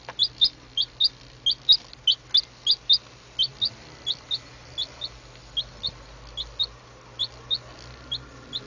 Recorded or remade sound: recorded